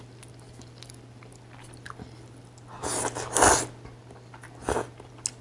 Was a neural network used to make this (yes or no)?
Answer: no